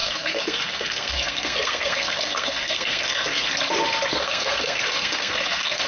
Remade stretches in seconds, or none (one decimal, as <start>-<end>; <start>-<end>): 0.0-3.5; 4.1-5.9